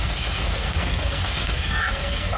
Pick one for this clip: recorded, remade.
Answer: remade